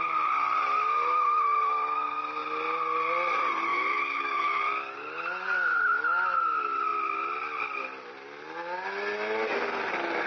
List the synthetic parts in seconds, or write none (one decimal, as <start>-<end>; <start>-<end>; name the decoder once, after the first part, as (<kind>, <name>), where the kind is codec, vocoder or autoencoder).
3.7-4.6 (autoencoder, DAC-VAE)